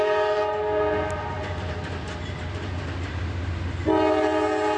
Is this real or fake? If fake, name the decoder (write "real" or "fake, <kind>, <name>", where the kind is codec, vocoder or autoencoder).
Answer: real